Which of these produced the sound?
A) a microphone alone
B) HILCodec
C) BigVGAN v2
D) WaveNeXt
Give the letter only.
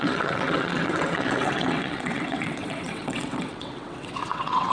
D